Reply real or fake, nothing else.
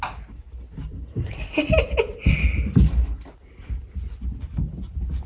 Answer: real